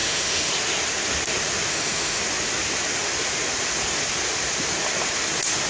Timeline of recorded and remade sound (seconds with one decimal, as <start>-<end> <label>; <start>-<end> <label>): 0.0-0.5 remade; 0.5-1.7 recorded; 1.7-2.2 remade; 2.2-5.7 recorded

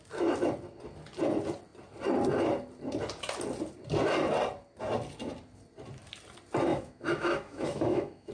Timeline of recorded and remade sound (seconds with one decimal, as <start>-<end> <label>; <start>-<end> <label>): 0.0-6.7 recorded; 6.7-8.3 remade

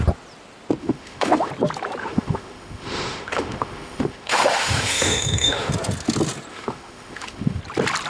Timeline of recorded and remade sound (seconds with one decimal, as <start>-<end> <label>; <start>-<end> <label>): 0.0-0.8 recorded; 0.8-1.5 remade; 1.5-2.0 recorded; 2.0-5.7 remade; 5.7-6.5 recorded; 6.5-7.6 remade; 7.6-8.1 recorded

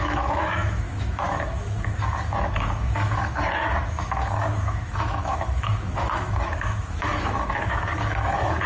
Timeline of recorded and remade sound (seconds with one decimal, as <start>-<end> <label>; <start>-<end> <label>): 0.0-8.7 remade

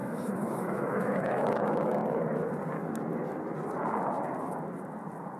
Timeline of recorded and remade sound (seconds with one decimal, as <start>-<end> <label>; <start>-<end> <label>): 0.0-2.0 remade; 2.0-5.4 recorded

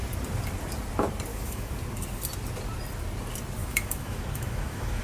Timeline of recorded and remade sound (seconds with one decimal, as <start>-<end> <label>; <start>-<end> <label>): 0.0-1.3 recorded; 1.3-1.8 remade; 1.8-3.6 recorded; 3.6-5.0 remade